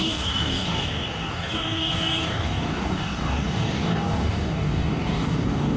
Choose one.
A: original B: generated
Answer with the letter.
B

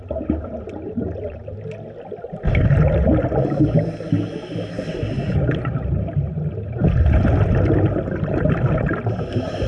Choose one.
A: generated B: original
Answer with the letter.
B